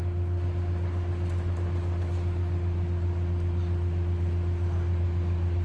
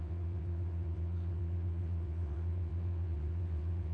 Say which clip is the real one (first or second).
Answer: first